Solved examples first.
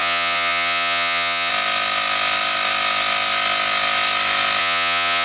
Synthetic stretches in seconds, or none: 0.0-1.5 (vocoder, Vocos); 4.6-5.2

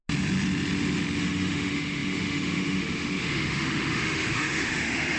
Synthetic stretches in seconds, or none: 1.2-5.2 (autoencoder, DAC-VAE)